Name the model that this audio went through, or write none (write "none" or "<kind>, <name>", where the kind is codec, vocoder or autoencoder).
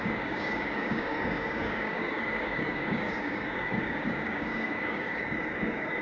codec, DAC